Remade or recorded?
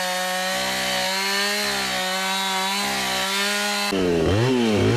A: recorded